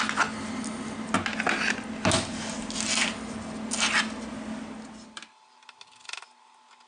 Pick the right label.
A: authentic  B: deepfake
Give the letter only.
A